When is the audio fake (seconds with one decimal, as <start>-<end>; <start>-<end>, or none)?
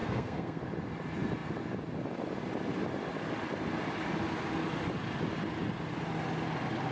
0.0-0.6